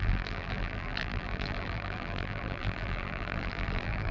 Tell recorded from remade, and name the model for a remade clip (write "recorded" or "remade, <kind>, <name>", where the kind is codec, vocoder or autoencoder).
remade, vocoder, BigVGAN v2